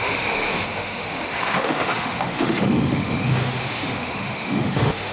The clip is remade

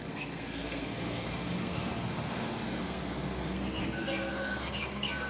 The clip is remade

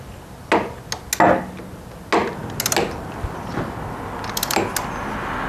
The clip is recorded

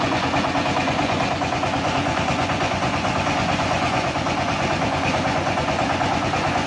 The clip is remade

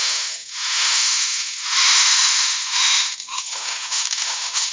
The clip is remade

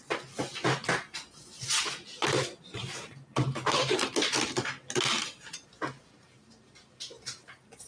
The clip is recorded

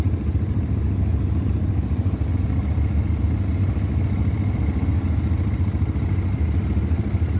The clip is recorded